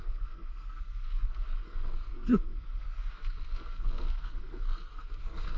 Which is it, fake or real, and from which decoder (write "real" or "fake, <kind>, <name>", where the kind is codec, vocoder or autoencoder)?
fake, codec, SNAC